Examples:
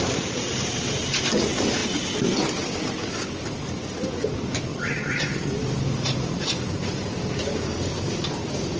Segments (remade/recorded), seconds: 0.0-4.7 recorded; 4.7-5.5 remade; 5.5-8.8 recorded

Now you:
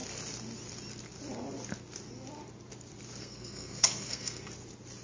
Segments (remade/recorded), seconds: 0.0-3.2 recorded; 3.2-4.4 remade; 4.4-5.0 recorded